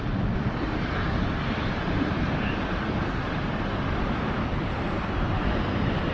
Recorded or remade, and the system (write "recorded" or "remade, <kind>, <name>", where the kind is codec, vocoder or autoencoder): remade, vocoder, BigVGAN v2